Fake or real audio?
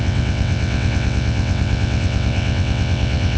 fake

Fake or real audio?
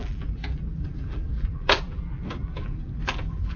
fake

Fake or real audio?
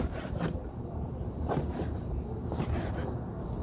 fake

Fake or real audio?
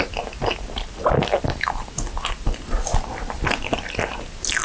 real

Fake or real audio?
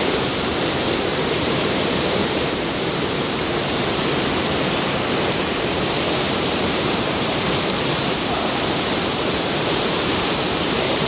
fake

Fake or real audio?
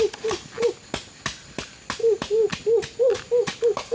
real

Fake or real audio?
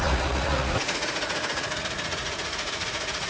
fake